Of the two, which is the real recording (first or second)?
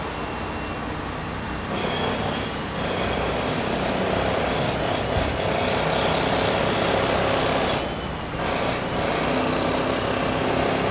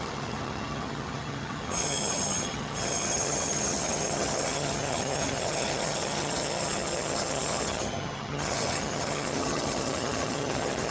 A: first